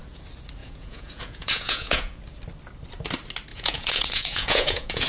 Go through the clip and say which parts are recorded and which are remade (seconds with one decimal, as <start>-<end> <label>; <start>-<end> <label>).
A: 0.0-0.6 recorded; 0.6-2.2 remade; 2.2-3.5 recorded; 3.5-5.1 remade